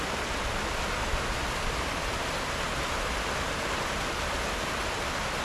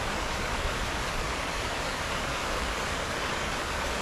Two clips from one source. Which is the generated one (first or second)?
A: second